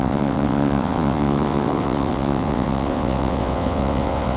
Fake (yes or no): yes